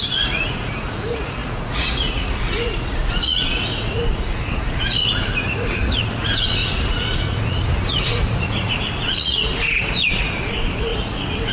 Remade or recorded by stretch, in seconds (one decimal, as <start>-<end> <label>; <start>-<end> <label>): 0.0-11.5 remade